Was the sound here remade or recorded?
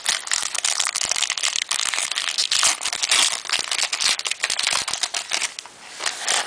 recorded